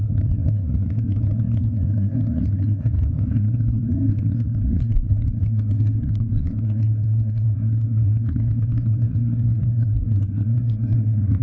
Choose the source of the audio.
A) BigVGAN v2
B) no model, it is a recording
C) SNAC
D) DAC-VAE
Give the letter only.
C